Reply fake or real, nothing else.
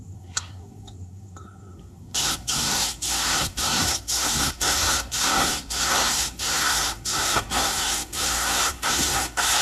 fake